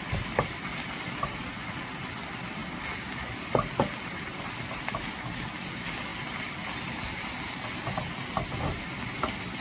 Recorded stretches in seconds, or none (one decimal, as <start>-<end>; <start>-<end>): 0.0-9.6